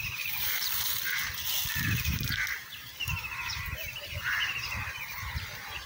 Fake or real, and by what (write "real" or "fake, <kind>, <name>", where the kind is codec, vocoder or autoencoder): fake, vocoder, BigVGAN v2